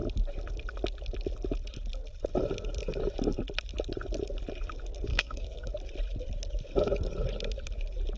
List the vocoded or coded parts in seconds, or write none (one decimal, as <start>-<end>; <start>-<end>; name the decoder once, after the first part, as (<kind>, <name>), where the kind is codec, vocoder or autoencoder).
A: 5.1-5.7 (codec, SNAC)

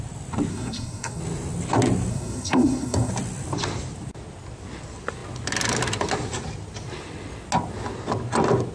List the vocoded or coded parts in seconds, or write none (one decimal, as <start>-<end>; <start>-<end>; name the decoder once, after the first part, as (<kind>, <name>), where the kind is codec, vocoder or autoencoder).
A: 0.5-1.2 (codec, SNAC); 2.1-3.1

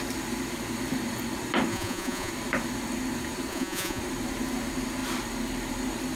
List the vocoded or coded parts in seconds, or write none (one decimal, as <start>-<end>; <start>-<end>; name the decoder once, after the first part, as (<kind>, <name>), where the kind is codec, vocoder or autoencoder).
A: 1.7-2.3 (vocoder, Vocos); 3.5-4.0

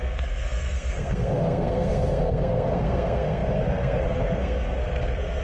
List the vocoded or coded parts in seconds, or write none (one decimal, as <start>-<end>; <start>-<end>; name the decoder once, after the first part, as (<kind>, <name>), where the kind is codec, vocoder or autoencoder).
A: 0.0-5.4 (codec, SNAC)

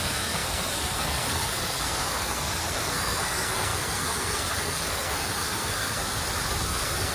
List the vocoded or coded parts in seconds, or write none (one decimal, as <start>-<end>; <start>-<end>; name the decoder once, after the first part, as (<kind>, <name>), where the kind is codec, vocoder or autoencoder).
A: 0.0-6.1 (codec, SNAC); 6.6-7.1

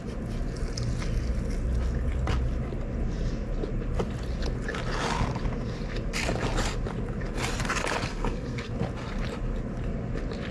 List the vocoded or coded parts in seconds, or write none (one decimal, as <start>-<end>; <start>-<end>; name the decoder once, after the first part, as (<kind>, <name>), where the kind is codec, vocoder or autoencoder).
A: 8.1-8.7 (codec, SNAC)

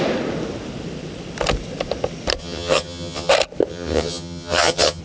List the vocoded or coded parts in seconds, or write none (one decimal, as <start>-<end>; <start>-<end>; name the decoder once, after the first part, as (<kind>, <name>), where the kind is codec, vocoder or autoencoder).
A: 2.4-3.3 (vocoder, HiFi-GAN); 3.7-5.0

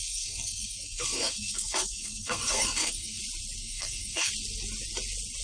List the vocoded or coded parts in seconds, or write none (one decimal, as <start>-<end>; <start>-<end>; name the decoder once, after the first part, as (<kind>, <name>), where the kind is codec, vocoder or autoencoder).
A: 0.0-3.2 (codec, SNAC); 3.6-4.3